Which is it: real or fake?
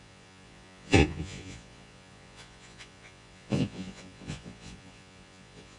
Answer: fake